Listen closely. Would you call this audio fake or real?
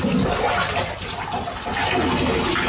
real